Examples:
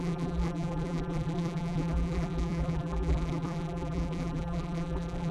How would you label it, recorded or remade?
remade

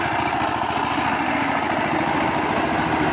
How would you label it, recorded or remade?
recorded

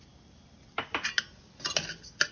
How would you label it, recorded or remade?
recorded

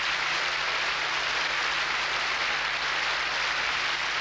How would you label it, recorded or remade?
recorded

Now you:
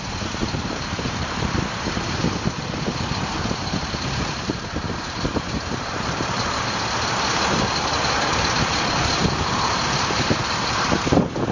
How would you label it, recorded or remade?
remade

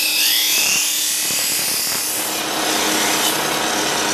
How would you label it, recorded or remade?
recorded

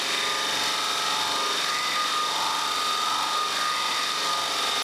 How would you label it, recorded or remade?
recorded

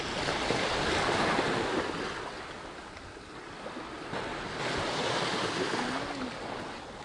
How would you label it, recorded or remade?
recorded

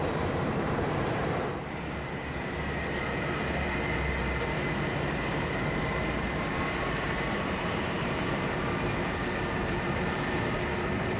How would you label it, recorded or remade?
remade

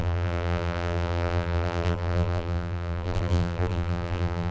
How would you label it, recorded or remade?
remade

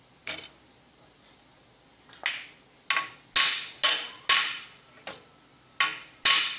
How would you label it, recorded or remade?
recorded